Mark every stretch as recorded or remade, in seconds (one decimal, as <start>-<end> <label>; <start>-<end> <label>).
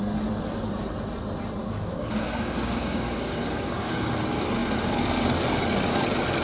0.0-1.6 recorded; 1.6-4.1 remade; 4.1-6.4 recorded